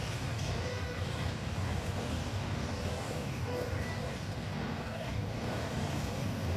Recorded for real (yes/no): no